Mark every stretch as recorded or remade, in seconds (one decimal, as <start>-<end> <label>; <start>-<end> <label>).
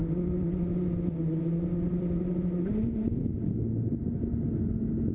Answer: 0.0-5.1 recorded